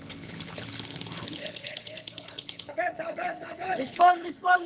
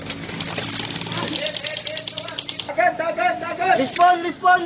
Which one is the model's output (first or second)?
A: first